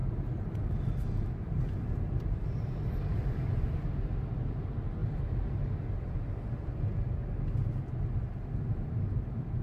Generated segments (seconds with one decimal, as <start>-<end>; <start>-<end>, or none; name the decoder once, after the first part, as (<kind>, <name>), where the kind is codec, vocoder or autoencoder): 0.0-3.4 (vocoder, BigVGAN v2)